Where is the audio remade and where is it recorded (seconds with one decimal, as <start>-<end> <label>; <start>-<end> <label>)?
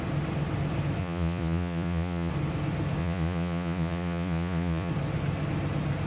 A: 0.0-1.0 recorded; 1.0-2.3 remade; 2.3-3.0 recorded; 3.0-4.9 remade; 4.9-6.1 recorded